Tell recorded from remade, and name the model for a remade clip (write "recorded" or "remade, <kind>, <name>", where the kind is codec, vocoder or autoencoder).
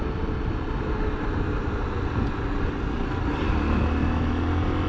recorded